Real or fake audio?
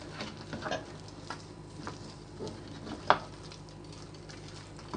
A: real